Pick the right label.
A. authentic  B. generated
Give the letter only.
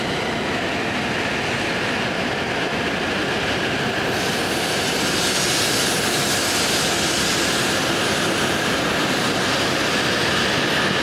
A